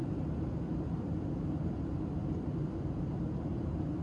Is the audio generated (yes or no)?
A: no